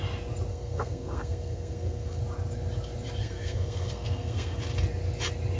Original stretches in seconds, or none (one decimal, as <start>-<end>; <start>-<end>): 0.0-0.5; 2.2-3.2; 4.6-5.6